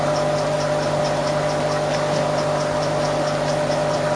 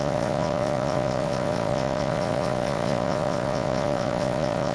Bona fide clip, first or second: first